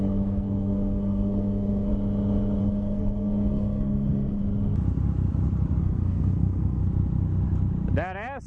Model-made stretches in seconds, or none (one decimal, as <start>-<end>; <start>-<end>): 0.0-1.9; 2.6-4.4; 5.8-6.8